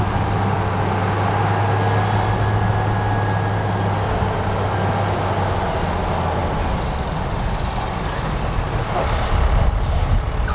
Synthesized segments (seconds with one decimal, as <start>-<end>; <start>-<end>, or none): none

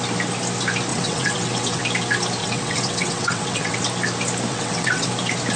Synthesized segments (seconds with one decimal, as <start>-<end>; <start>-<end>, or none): 0.9-1.8; 2.4-3.8; 4.5-5.1

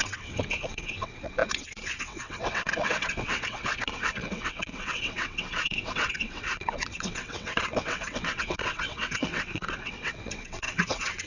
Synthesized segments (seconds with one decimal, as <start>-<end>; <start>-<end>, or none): 0.0-11.3

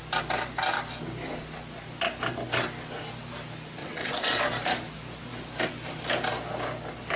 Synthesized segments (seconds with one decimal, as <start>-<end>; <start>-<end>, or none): 3.8-4.4

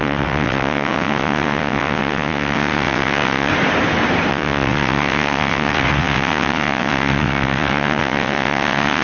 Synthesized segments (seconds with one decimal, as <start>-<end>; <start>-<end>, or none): 0.0-3.5; 4.3-9.0

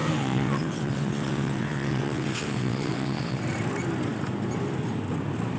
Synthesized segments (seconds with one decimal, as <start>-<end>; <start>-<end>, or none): 0.0-3.4

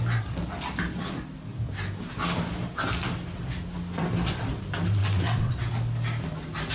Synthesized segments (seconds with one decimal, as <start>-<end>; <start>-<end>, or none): 5.0-5.5

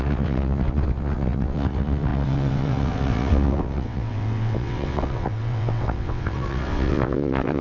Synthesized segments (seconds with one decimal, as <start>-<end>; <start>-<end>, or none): 0.0-7.6